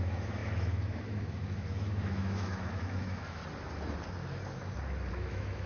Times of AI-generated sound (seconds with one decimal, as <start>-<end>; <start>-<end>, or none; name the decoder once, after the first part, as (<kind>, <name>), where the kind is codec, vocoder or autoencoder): 0.0-3.4 (autoencoder, DAC-VAE); 5.1-5.7